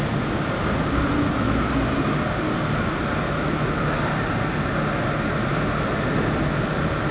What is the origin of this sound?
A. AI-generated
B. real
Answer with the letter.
B